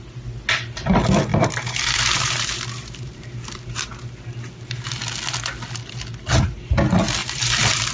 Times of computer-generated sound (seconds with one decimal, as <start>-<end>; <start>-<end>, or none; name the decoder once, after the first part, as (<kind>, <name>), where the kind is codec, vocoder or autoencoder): 1.3-4.9 (vocoder, BigVGAN v2); 7.2-7.9